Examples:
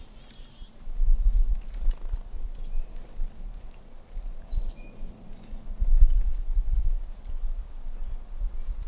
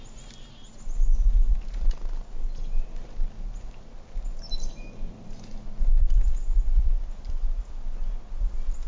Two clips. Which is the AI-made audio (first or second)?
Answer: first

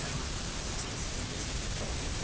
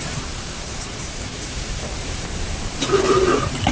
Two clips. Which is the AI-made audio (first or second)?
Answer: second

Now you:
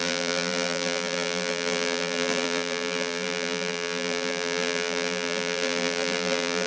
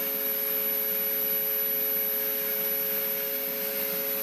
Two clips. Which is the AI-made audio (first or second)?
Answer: first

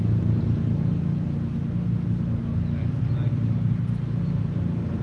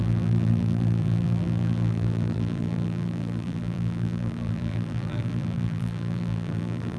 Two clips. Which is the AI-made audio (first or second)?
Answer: second